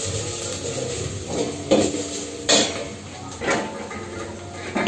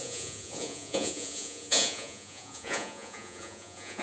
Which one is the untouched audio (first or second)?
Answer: first